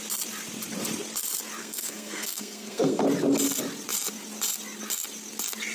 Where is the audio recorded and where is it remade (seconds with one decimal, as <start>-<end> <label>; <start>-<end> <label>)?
0.0-1.6 recorded; 1.6-3.0 remade; 3.0-5.7 recorded